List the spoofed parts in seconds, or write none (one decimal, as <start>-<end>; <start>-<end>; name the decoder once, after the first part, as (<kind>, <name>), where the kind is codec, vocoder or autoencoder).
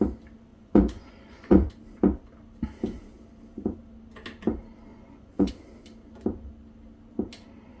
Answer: 0.5-1.7 (vocoder, Vocos); 4.9-5.5